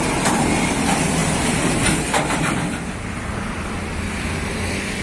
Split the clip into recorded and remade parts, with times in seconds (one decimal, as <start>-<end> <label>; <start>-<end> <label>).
0.0-5.0 recorded